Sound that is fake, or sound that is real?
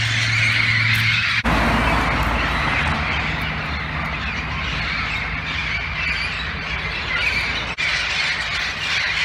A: real